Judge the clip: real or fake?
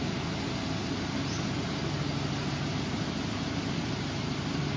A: real